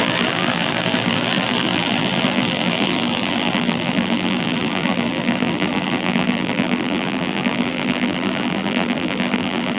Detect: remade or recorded remade